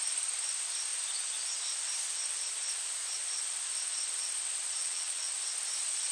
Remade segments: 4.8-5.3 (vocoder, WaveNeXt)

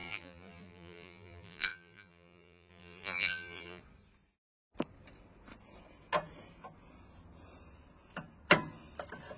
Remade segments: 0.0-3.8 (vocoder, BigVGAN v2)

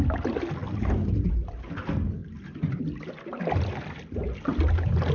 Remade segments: none

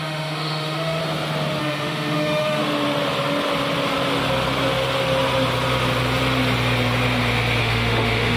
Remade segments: 0.0-1.0 (autoencoder, DAC-VAE); 1.6-2.6; 7.6-8.4